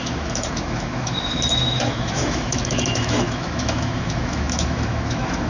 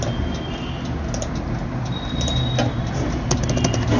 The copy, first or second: first